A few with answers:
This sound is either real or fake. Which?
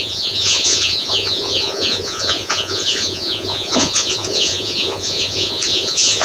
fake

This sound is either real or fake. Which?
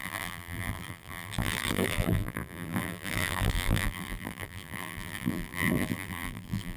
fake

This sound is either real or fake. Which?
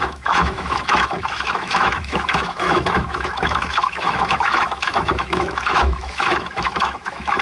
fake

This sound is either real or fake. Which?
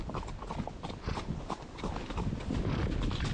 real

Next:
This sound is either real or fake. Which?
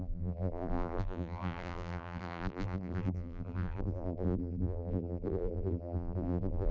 fake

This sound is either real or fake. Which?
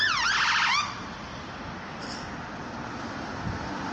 real